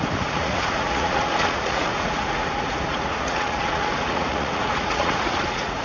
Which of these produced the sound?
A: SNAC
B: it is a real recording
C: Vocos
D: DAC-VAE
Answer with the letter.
C